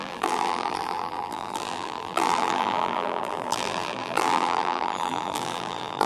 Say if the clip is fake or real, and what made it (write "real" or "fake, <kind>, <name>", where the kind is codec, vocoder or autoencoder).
fake, vocoder, BigVGAN v2